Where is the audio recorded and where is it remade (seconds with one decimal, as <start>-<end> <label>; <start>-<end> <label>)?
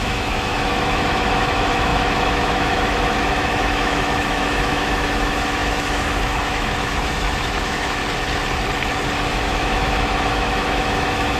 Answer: 0.0-8.0 remade; 8.0-9.3 recorded; 9.3-11.4 remade